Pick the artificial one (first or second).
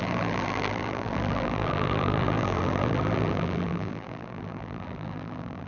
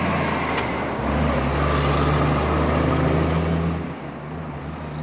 first